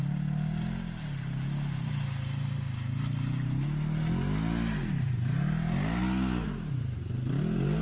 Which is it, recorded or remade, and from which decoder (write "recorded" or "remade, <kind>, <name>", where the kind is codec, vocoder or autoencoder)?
recorded